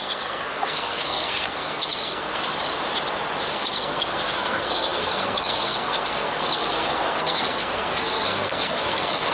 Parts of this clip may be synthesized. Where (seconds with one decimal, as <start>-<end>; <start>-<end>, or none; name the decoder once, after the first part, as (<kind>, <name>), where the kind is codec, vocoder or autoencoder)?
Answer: 0.0-2.5 (codec, SNAC); 3.4-9.3